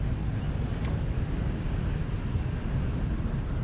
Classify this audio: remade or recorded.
recorded